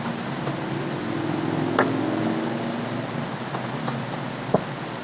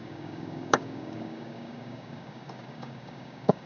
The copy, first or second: second